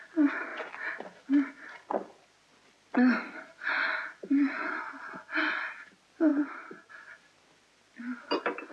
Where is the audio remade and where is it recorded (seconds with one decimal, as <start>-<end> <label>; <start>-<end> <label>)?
0.0-8.7 recorded